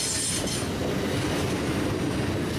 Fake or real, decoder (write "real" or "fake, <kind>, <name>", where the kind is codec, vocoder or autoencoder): real